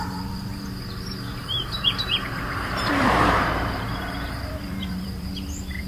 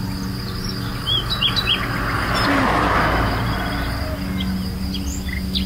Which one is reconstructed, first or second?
first